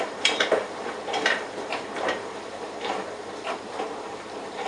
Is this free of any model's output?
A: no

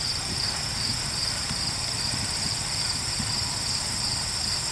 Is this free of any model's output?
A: no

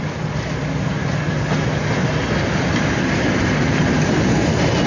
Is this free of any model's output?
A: yes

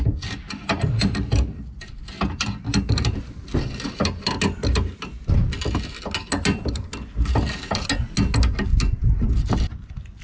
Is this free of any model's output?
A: yes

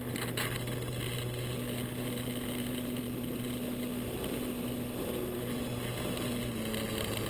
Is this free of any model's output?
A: yes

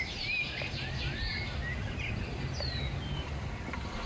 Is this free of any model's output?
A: yes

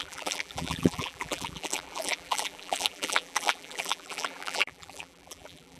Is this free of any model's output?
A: no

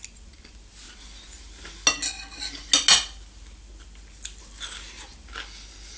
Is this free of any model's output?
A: yes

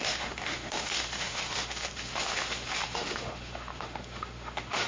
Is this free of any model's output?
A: no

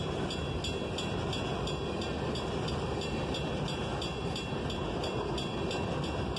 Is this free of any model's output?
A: yes